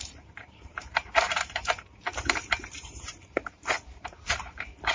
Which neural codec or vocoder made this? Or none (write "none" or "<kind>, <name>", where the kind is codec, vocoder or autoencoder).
vocoder, BigVGAN v2